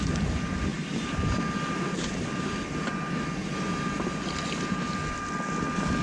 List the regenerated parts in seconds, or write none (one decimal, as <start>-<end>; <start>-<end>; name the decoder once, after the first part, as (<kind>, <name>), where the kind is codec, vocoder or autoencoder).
none